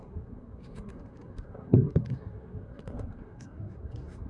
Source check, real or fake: fake